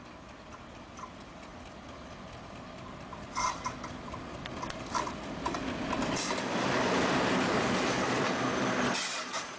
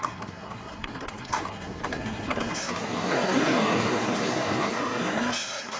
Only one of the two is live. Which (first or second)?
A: first